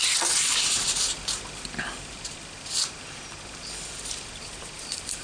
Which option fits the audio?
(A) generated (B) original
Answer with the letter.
A